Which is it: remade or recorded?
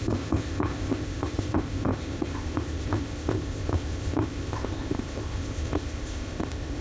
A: remade